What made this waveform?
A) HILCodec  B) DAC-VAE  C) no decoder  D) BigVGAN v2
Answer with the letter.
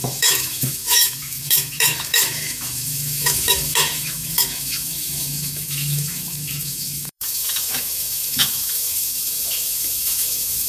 B